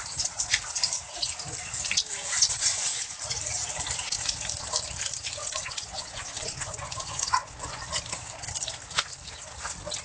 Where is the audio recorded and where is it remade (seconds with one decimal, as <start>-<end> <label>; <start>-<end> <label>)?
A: 0.0-2.6 recorded; 2.6-3.2 remade; 3.2-5.4 recorded; 5.4-7.8 remade; 7.8-10.0 recorded